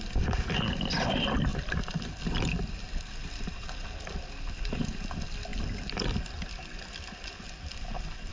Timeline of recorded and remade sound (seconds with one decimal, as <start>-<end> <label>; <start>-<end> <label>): 0.0-8.3 recorded